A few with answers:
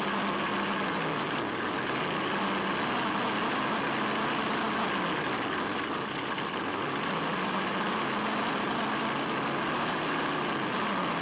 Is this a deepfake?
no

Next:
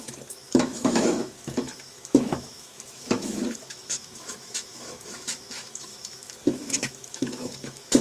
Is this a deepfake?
yes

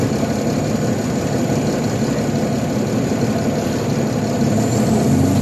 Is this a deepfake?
no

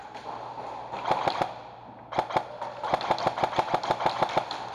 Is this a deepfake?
no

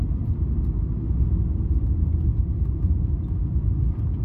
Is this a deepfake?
no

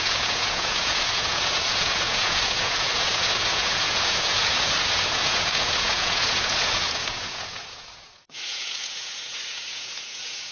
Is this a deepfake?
yes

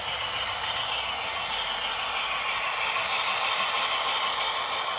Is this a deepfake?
no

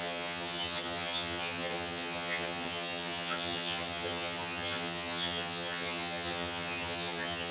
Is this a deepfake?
yes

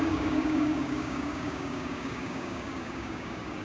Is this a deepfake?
yes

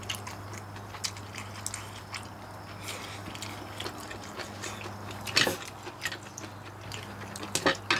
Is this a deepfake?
no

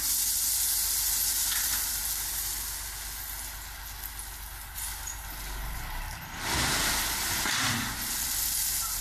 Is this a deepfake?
no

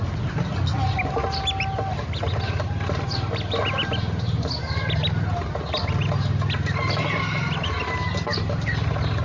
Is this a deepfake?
no